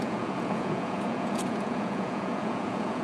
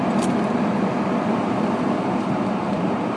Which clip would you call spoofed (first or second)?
first